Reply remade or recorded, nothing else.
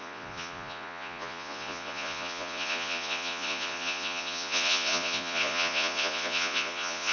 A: remade